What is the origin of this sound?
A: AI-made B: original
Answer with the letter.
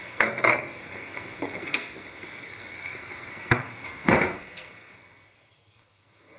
A